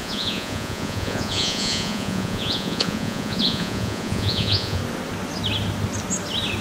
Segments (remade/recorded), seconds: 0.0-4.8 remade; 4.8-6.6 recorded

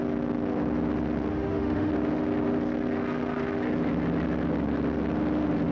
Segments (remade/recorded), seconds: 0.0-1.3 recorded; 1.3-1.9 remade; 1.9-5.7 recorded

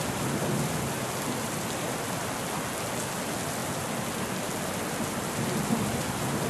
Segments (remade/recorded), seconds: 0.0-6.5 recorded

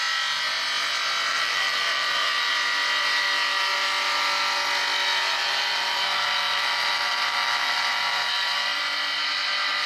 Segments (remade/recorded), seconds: 0.0-1.3 recorded; 1.3-2.5 remade; 2.5-5.4 recorded; 5.4-8.8 remade; 8.8-9.9 recorded

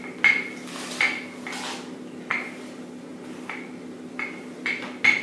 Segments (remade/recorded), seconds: 0.0-5.2 recorded

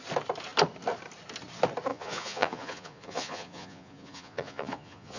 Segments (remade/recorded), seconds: 0.0-1.9 recorded; 1.9-5.2 remade